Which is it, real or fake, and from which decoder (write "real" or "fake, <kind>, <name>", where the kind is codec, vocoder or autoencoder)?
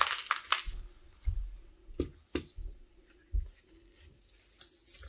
real